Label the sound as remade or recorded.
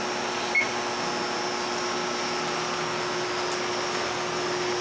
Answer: recorded